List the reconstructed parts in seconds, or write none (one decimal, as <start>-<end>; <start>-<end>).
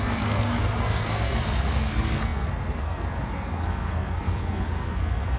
0.0-5.4